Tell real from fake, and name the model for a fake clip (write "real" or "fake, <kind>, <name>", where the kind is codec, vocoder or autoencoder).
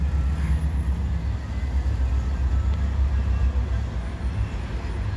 real